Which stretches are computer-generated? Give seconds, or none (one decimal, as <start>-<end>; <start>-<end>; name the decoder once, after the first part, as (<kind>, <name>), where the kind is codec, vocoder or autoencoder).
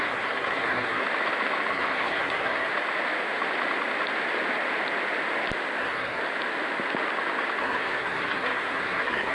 0.0-1.0 (codec, SNAC); 1.7-2.7; 5.8-6.2; 7.6-9.3